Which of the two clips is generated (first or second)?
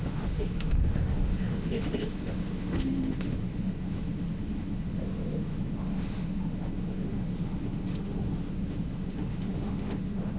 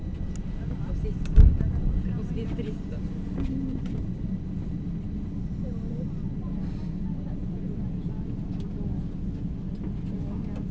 first